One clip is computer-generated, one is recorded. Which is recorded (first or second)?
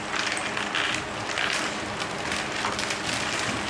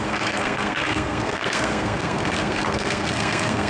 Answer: first